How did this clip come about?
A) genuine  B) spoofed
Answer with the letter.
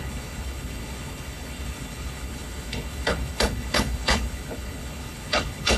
B